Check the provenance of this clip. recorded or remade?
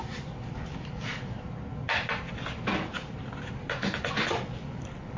recorded